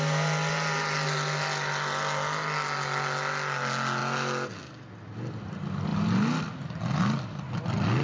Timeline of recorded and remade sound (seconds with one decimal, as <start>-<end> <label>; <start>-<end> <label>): 0.0-8.0 recorded